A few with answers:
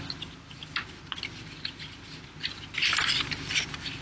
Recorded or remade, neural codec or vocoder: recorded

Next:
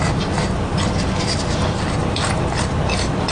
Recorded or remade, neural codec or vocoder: recorded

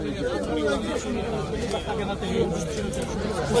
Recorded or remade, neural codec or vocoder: recorded